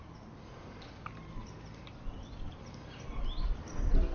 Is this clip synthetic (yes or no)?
no